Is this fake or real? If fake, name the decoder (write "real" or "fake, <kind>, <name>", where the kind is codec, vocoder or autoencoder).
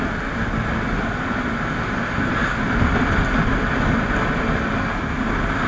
real